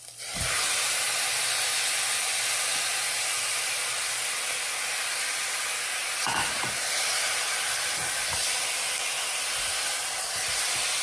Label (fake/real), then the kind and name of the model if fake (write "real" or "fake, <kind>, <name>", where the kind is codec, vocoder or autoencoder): real